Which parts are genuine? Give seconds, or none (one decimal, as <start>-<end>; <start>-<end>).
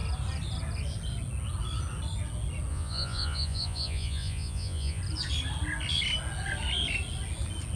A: 0.0-2.7; 5.0-7.8